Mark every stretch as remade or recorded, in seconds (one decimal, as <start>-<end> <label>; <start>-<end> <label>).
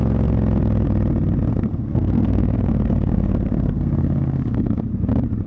0.0-1.5 recorded; 1.5-4.8 remade; 4.8-5.5 recorded